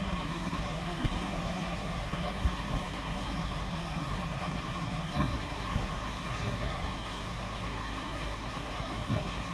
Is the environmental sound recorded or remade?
remade